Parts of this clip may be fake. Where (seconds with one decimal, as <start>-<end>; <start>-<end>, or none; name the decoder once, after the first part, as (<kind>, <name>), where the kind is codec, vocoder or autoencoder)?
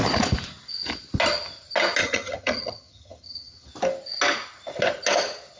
2.0-3.7 (vocoder, HiFi-GAN)